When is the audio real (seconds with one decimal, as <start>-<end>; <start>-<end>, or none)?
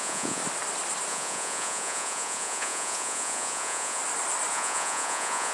0.4-1.1; 4.0-4.5